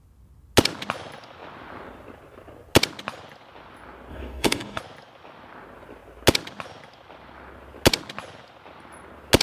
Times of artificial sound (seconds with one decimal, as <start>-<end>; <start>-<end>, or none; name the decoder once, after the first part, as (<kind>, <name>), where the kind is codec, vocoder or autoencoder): 4.1-4.8 (codec, DAC)